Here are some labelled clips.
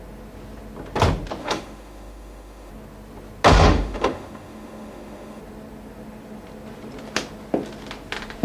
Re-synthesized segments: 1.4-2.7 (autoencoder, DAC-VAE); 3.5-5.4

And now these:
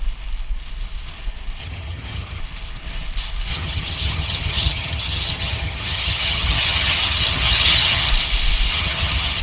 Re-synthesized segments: 1.6-2.4 (vocoder, HiFi-GAN); 3.5-8.1; 8.7-9.4

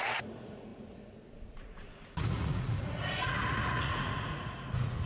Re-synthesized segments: 0.0-5.1 (vocoder, Vocos)

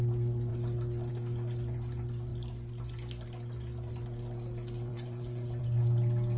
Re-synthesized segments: 4.9-5.6 (vocoder, Vocos)

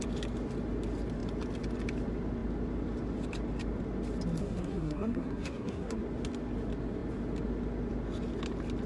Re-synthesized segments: 4.4-6.0 (codec, SNAC)